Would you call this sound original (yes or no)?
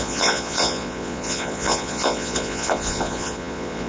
no